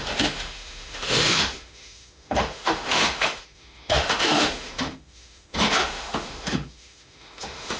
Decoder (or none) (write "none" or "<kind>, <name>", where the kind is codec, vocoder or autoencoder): autoencoder, DAC-VAE